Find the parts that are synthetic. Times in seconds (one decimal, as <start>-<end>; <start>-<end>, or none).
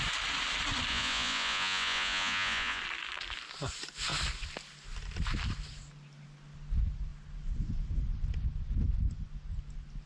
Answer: 0.9-2.8